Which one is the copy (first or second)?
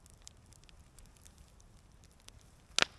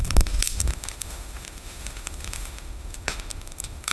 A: second